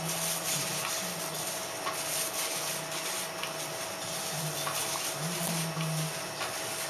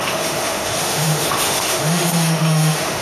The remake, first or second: second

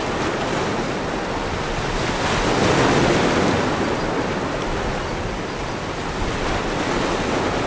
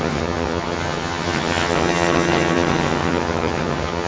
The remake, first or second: second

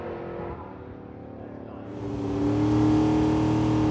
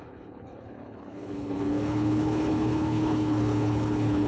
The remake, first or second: second